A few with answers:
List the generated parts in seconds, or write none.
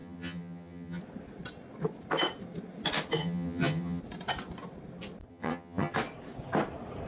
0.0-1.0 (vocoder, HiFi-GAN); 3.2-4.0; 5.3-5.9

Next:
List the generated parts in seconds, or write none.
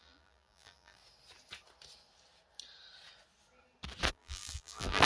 0.0-1.0 (vocoder, BigVGAN v2); 4.1-5.1